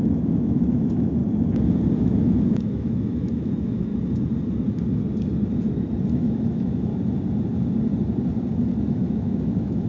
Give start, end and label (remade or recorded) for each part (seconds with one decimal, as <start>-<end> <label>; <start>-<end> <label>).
0.0-1.2 remade; 1.2-2.0 recorded; 2.0-3.9 remade; 3.9-6.1 recorded; 6.1-6.9 remade; 6.9-8.9 recorded; 8.9-9.9 remade